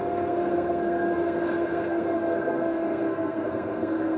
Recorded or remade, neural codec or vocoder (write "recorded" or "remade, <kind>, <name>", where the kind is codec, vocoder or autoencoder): remade, codec, SNAC